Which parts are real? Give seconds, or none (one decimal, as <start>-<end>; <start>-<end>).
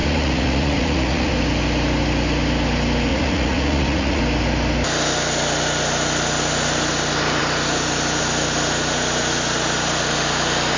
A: 1.3-3.1; 4.2-10.8